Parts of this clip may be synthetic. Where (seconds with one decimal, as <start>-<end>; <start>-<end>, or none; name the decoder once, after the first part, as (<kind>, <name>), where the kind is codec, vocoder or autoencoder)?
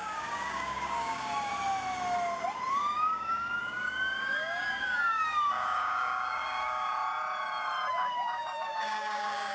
0.0-1.5 (codec, DAC); 2.7-6.9; 7.9-9.5